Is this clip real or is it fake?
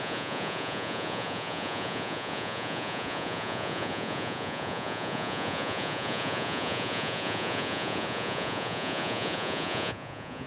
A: fake